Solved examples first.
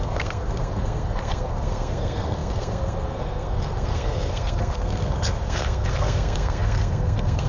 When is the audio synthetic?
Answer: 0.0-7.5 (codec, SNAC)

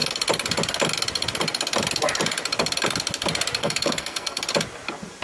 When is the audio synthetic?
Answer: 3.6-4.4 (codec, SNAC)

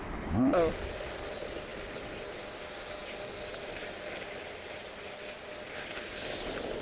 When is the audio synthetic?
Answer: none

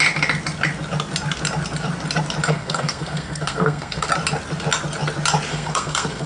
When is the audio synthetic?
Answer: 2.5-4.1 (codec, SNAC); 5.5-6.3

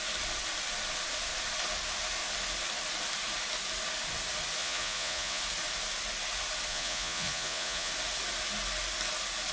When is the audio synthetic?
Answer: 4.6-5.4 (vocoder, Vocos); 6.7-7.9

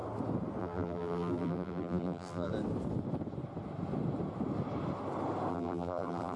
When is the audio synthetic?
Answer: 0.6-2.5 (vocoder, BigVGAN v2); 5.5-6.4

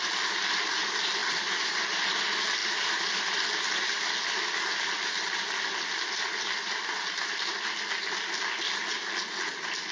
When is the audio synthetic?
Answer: none

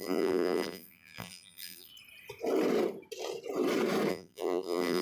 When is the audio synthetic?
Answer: 0.0-1.9 (vocoder, BigVGAN v2); 4.1-5.0